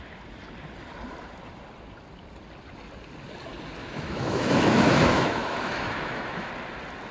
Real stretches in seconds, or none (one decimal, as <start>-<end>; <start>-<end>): 0.0-3.8; 6.5-7.1